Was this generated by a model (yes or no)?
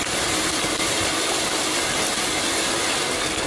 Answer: no